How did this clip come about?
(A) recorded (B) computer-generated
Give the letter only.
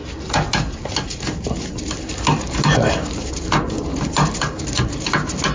A